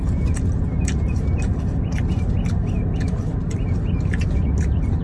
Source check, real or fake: real